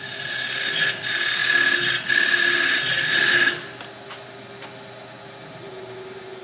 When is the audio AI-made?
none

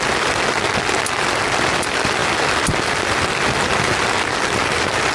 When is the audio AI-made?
none

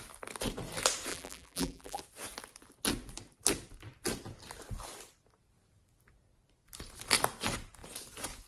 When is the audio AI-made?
1.1-2.0 (vocoder, BigVGAN v2)